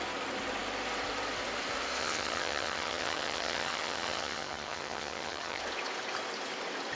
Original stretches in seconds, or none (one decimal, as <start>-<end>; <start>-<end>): 0.0-2.0; 5.6-7.0